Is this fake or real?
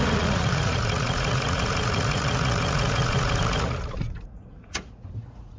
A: fake